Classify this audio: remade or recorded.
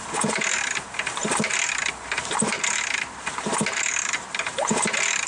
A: recorded